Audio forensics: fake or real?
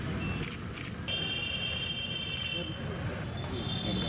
real